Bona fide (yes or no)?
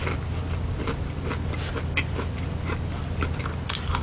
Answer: yes